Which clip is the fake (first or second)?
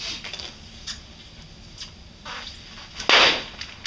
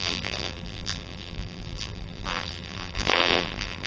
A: second